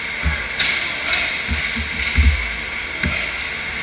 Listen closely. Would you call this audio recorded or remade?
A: recorded